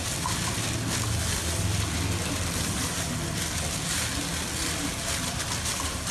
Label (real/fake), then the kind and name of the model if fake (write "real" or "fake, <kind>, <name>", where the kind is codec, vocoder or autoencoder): real